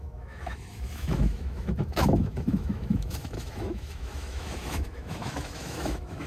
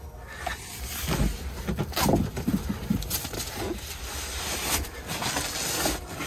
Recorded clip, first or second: second